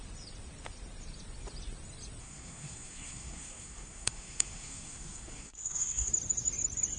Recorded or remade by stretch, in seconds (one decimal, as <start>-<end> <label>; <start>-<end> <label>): 0.0-2.2 recorded; 2.2-6.1 remade; 6.1-7.0 recorded